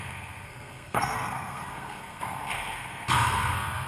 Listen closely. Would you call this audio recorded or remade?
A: remade